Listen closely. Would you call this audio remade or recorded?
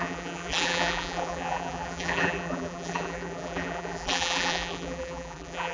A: remade